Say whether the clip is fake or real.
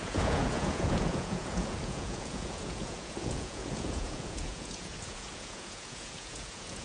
fake